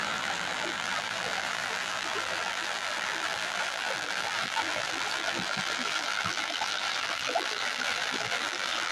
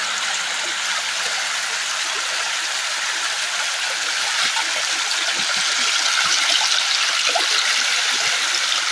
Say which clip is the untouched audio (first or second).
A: second